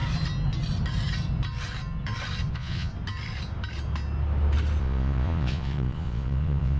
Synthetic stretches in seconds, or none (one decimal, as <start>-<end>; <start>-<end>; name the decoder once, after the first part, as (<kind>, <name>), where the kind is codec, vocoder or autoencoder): 2.5-2.9 (vocoder, Vocos); 4.8-6.8